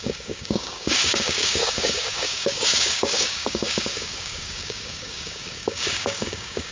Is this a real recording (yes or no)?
no